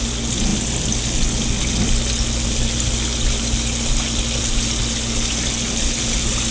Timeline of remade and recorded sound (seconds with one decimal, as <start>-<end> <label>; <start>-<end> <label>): 0.0-6.5 recorded